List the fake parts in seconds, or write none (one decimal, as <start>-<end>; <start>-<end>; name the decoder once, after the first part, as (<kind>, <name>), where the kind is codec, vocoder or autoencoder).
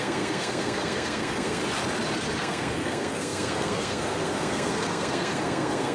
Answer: 0.0-1.6 (codec, SNAC); 2.4-5.9